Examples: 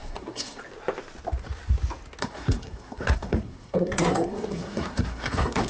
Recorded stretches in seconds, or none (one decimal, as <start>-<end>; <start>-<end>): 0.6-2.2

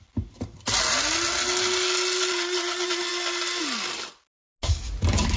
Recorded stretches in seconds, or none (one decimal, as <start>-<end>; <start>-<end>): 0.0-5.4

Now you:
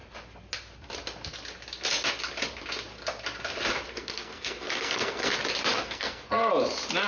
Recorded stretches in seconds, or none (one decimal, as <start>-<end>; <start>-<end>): 0.0-3.9; 5.3-5.7; 6.5-7.1

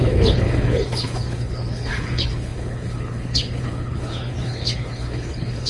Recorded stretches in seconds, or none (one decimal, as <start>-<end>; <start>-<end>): none

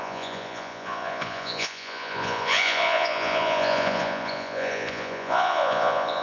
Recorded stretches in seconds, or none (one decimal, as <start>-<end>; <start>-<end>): none

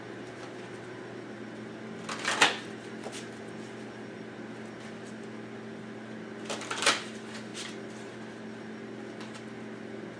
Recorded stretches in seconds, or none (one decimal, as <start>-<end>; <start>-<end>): 0.0-10.2